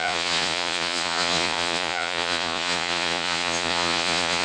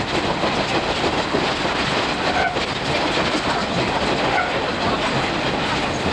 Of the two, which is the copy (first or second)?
first